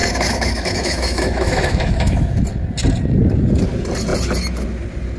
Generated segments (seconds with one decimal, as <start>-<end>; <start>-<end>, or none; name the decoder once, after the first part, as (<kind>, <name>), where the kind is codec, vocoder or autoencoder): 0.0-2.4 (autoencoder, DAC-VAE)